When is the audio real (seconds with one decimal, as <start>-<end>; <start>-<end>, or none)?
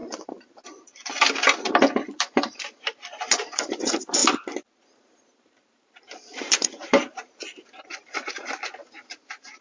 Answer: 4.2-4.8